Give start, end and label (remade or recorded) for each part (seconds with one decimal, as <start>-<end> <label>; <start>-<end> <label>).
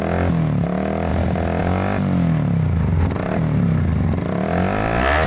0.0-5.3 recorded